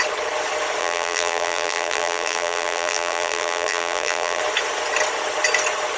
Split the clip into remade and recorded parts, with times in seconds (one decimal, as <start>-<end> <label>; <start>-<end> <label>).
0.0-0.8 recorded; 0.8-4.4 remade; 4.4-6.0 recorded